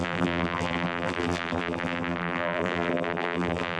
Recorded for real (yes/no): no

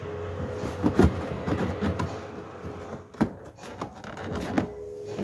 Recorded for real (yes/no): yes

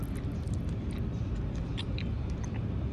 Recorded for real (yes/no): yes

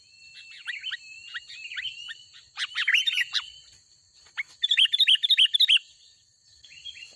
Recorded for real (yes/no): yes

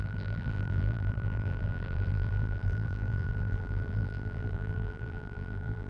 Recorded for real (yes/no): no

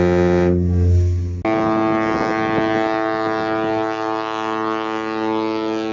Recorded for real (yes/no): yes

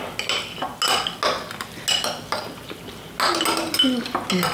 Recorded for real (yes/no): yes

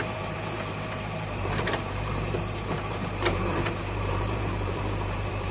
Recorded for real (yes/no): no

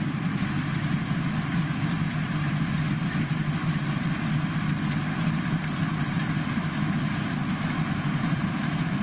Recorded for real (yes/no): no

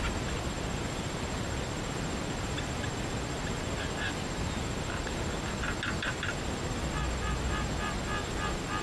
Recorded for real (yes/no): yes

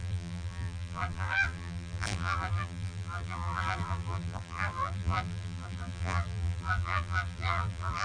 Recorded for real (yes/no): no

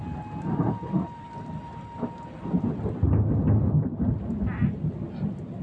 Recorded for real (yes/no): yes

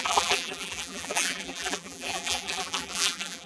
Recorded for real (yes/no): no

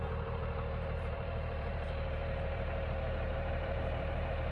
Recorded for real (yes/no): no